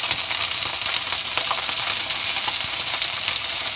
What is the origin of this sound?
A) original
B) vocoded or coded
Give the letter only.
A